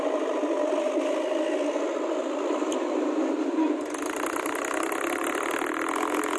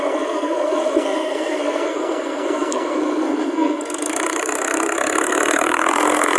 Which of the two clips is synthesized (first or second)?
second